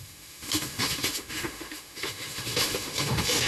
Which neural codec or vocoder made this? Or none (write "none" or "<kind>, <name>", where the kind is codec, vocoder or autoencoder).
autoencoder, DAC-VAE